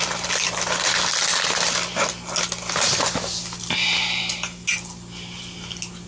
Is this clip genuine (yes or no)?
yes